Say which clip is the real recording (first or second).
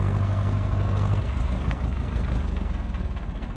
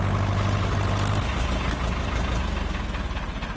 second